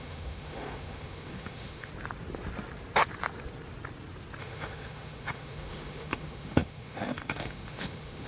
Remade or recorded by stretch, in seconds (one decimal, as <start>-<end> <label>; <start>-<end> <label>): 0.0-1.9 remade; 1.9-4.4 recorded; 4.4-8.3 remade